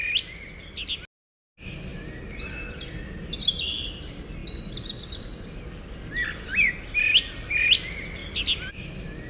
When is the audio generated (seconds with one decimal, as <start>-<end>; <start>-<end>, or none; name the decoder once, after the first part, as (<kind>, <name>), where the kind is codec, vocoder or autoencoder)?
1.9-2.6 (vocoder, BigVGAN v2)